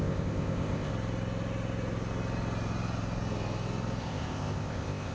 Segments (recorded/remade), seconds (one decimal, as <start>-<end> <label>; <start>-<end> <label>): 0.0-0.9 remade; 0.9-4.0 recorded; 4.0-5.1 remade